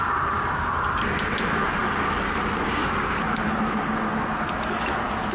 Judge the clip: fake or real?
real